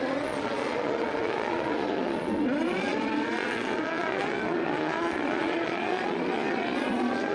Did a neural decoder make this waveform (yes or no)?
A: yes